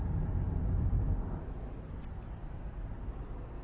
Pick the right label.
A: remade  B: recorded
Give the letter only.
B